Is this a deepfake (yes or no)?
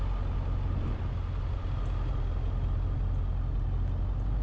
no